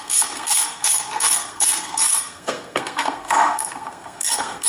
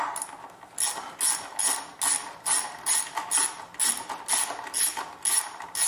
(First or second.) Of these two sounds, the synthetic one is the first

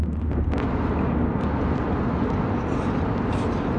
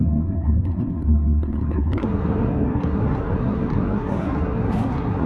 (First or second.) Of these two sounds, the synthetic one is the second